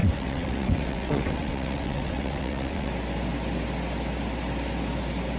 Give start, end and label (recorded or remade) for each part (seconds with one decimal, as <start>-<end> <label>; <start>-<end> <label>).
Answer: 0.0-2.9 remade; 2.9-5.4 recorded